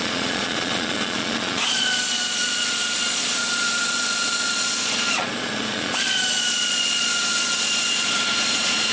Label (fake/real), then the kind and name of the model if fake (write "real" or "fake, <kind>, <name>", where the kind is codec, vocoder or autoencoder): fake, vocoder, Vocos